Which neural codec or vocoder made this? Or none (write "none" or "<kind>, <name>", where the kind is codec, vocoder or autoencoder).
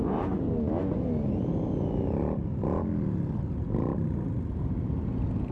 none